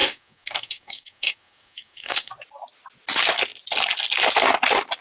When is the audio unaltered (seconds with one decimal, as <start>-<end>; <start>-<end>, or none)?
2.3-5.0